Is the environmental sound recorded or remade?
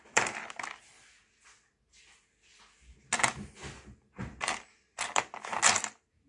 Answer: recorded